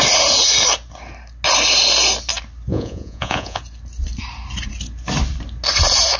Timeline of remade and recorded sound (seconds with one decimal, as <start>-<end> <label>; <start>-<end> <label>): 0.0-2.7 recorded; 2.7-3.6 remade; 3.6-6.2 recorded